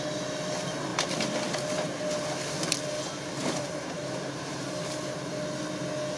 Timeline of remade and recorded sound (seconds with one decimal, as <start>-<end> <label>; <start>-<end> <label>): 0.0-3.4 recorded; 3.4-4.8 remade; 4.8-6.2 recorded